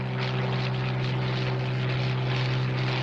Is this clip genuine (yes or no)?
yes